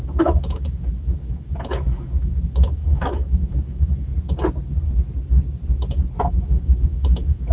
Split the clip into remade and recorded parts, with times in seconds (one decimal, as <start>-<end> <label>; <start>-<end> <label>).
0.0-4.1 remade; 4.1-6.3 recorded; 6.3-7.5 remade